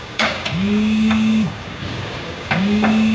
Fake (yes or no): yes